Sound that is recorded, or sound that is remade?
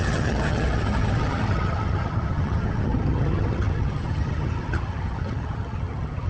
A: remade